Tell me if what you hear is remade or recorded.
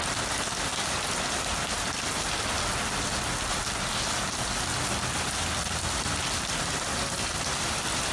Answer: recorded